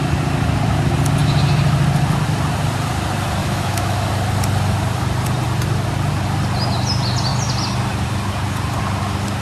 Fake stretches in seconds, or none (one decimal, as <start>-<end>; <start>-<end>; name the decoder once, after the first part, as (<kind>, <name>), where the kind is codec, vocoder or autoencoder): 3.4-4.1 (autoencoder, DAC-VAE)